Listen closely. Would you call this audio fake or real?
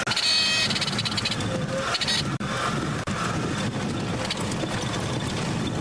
real